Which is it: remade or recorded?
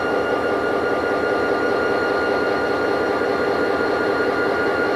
recorded